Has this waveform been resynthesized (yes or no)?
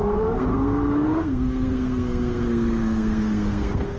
yes